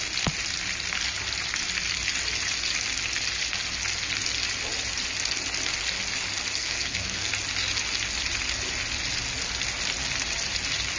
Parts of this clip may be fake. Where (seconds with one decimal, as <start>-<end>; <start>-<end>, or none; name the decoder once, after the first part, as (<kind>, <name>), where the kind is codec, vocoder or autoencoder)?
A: 6.6-7.3 (codec, SNAC)